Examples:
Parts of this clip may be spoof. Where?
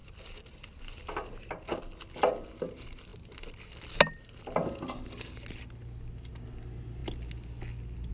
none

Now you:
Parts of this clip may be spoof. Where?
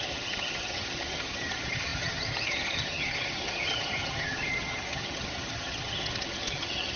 0.0-7.0 (vocoder, HiFi-GAN)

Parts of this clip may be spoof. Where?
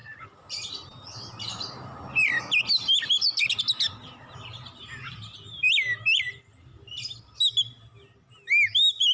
none